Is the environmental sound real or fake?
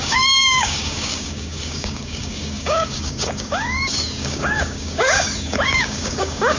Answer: fake